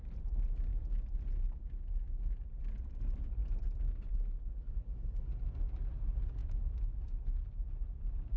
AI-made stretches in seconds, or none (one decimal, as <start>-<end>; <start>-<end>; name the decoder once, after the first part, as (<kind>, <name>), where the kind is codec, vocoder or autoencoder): 6.4-7.0 (autoencoder, DAC-VAE)